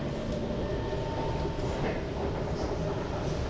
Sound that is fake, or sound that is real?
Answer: real